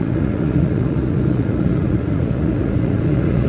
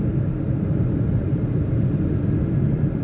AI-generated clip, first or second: first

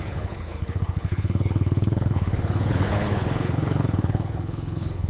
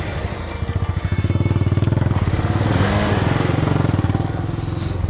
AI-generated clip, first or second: first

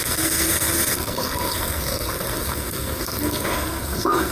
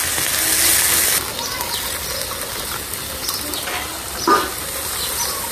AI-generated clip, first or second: first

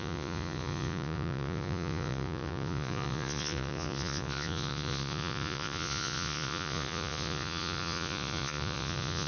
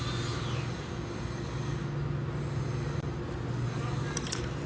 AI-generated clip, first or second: first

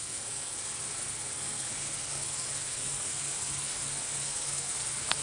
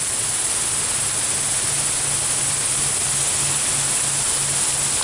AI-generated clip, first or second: first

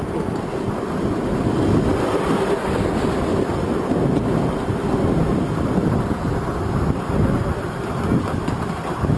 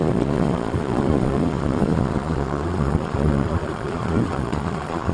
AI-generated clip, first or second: second